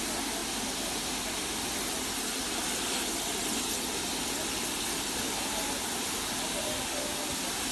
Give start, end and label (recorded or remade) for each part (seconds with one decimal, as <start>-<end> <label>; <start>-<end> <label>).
0.0-7.7 recorded